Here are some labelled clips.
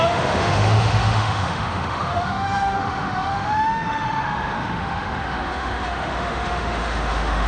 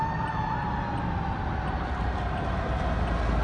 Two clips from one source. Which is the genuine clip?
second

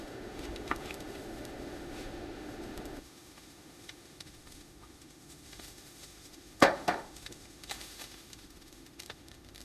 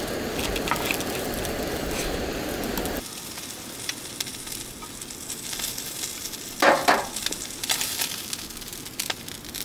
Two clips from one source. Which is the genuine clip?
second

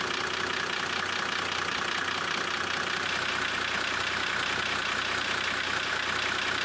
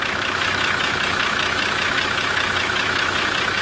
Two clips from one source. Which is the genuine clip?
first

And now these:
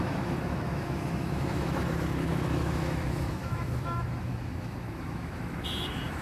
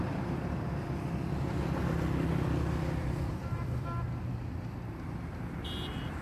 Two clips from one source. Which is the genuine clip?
second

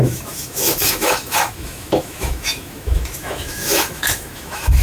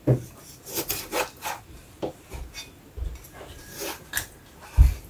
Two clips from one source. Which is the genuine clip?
second